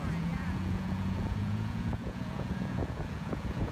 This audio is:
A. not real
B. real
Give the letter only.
A